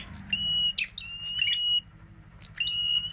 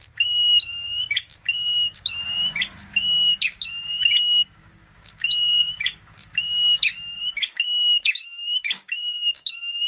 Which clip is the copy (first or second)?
second